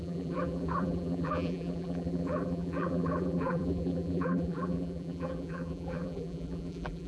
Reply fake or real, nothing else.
fake